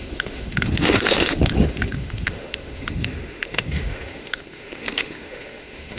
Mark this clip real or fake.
fake